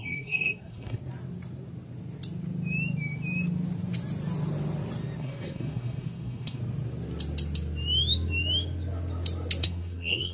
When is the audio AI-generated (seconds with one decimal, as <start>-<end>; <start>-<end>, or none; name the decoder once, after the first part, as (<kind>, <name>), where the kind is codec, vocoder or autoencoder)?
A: 0.0-1.0 (codec, SNAC); 5.2-6.6; 9.6-10.3